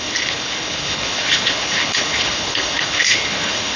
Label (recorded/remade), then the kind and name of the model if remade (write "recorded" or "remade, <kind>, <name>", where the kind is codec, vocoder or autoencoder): remade, codec, HILCodec